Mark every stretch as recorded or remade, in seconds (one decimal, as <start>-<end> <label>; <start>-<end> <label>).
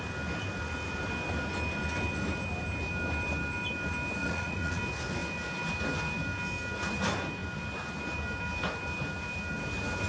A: 0.0-4.2 recorded; 4.2-4.8 remade; 4.8-10.1 recorded